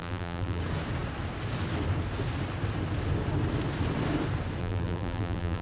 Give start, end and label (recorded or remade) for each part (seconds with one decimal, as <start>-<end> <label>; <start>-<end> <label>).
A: 0.0-0.6 remade; 0.6-4.6 recorded; 4.6-5.6 remade